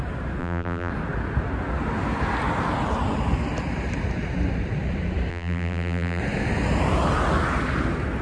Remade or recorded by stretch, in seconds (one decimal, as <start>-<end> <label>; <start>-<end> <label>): 0.0-0.4 recorded; 0.4-0.9 remade; 0.9-5.3 recorded; 5.3-6.2 remade; 6.2-8.2 recorded